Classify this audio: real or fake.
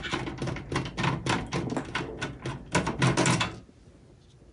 real